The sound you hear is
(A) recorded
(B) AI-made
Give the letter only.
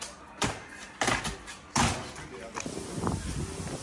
A